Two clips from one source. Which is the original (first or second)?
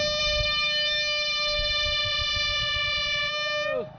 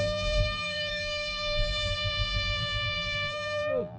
first